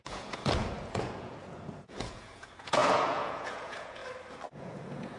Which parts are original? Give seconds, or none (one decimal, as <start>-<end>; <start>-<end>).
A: 4.0-4.6